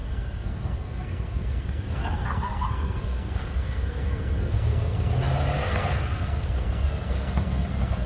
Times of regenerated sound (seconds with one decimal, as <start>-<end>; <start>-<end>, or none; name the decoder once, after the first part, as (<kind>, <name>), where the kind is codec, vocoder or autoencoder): 0.0-5.1 (codec, SNAC); 5.7-8.1